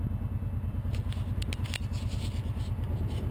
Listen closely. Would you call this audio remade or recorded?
recorded